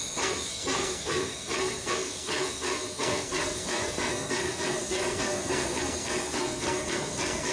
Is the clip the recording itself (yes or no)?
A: no